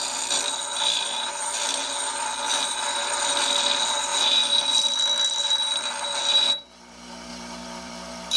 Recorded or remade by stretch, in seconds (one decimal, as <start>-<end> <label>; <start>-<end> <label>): 0.0-7.3 recorded; 7.3-8.4 remade